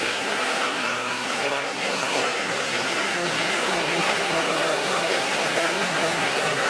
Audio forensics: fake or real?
fake